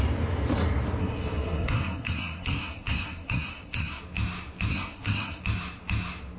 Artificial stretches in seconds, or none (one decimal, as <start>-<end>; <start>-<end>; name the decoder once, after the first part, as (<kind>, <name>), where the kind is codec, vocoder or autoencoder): 1.0-4.0 (codec, SNAC); 4.7-5.4